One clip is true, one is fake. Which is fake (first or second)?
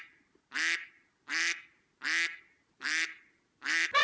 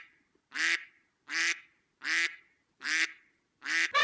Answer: second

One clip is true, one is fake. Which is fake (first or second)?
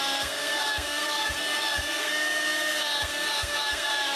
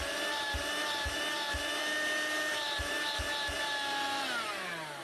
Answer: first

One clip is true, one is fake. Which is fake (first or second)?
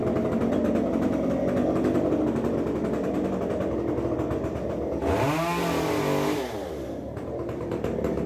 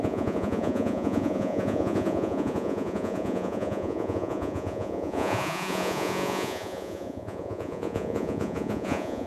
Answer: second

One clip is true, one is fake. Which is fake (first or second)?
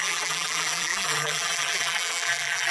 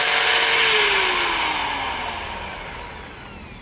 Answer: first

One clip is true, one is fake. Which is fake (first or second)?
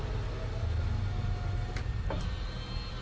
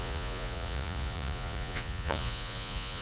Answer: second